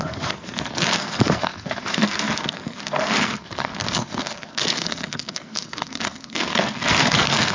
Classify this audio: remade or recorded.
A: remade